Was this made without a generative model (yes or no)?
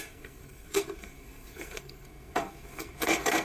no